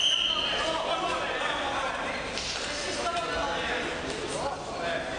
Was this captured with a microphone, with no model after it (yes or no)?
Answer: yes